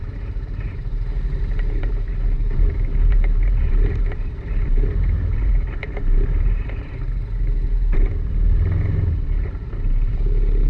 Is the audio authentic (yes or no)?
no